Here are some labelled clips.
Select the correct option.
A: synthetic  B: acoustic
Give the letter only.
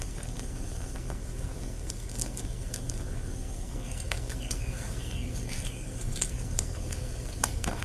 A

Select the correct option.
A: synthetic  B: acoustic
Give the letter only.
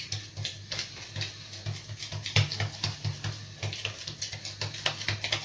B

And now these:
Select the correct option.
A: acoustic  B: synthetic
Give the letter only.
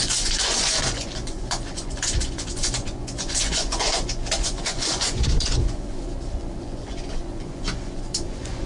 B